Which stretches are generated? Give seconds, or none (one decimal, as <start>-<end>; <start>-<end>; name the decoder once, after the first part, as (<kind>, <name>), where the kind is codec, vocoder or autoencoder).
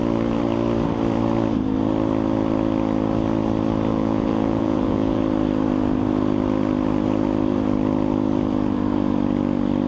3.9-5.2 (vocoder, Vocos)